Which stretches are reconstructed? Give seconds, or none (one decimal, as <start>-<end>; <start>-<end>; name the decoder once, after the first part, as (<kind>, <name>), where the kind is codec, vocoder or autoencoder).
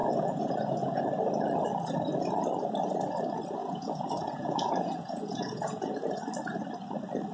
0.0-1.0 (vocoder, Vocos); 3.6-5.9